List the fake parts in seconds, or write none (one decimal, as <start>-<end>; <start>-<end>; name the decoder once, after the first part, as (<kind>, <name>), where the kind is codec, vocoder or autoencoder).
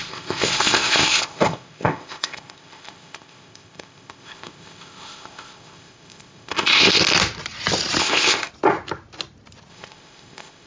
0.0-7.0 (codec, ZipCodec); 8.0-8.5; 9.7-10.7